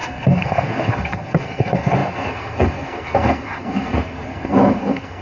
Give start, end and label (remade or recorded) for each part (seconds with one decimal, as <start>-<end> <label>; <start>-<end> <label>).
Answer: 0.0-5.2 remade